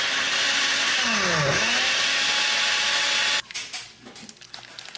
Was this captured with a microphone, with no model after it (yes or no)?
yes